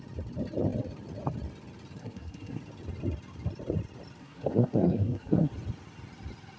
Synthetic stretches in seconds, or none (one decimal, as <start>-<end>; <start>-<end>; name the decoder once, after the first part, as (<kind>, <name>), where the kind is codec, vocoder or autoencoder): 2.0-2.6 (codec, SNAC); 4.2-5.5